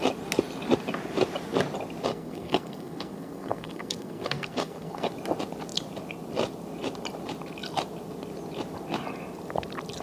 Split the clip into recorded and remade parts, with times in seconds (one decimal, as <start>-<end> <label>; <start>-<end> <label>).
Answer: 0.0-2.1 recorded; 2.1-5.1 remade; 5.1-10.0 recorded